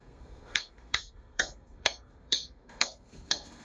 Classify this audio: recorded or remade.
remade